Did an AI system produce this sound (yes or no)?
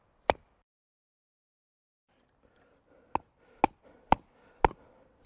no